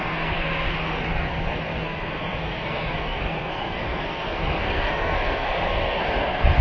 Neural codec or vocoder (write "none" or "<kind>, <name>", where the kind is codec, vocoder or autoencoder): codec, SNAC